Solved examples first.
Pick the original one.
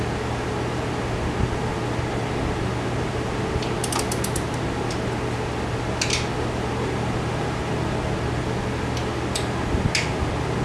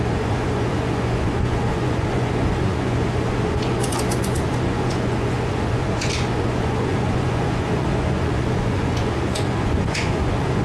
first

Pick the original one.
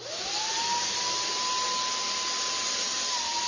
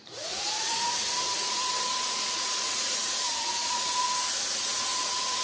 first